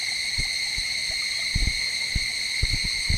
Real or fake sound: real